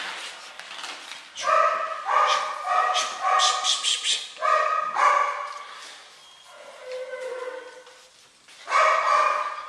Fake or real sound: real